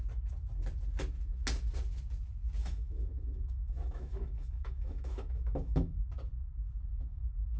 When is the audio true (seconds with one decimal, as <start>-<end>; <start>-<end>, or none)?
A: 0.0-2.6; 6.0-6.9